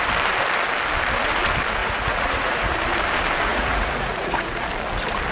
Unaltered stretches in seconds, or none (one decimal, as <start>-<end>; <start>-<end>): 0.0-1.8; 2.7-3.5; 4.7-5.3

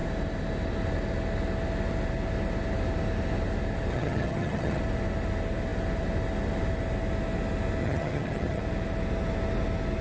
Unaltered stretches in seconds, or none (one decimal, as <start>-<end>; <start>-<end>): 0.0-3.9; 4.8-7.8; 8.6-10.0

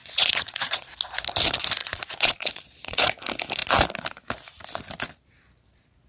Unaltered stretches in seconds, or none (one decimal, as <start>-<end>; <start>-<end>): 0.9-1.8; 3.1-6.1

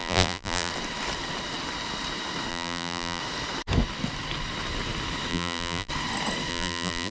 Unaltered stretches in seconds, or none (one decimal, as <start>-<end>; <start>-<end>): 0.7-2.5; 3.2-5.3; 5.9-6.5

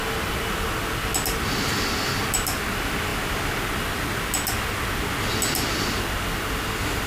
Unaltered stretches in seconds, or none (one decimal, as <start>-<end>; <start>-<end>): 0.0-7.1

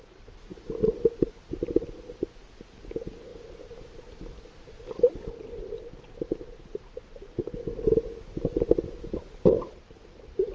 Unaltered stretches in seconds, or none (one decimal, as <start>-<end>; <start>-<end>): 0.0-10.5

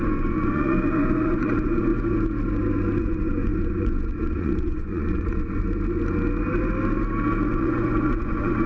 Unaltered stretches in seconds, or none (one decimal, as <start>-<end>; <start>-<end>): 1.9-3.0; 5.6-7.5

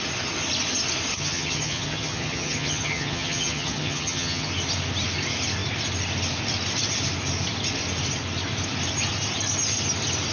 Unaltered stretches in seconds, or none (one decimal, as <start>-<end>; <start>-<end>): 0.0-1.1; 4.5-10.3